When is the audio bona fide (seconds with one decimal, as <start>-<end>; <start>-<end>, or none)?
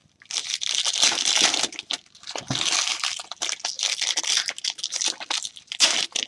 0.0-6.3